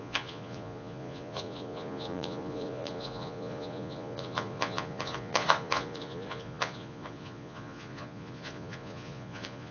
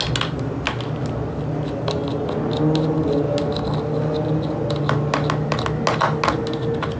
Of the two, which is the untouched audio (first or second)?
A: second